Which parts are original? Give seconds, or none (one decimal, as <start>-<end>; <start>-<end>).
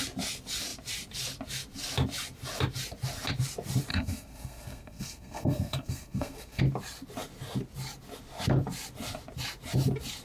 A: 0.0-3.9; 6.6-10.2